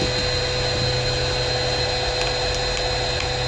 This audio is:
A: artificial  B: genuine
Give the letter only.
B